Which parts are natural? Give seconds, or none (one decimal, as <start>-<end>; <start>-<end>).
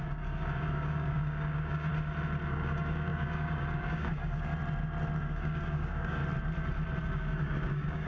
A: 1.9-2.5; 4.5-5.2; 6.2-7.0